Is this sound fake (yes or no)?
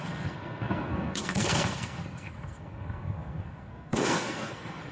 yes